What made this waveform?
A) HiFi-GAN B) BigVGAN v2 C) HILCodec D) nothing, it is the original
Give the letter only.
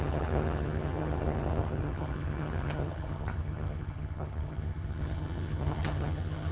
A